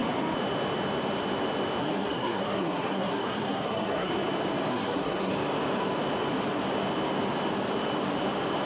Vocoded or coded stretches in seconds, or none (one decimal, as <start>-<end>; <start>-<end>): 1.8-4.1; 4.7-5.3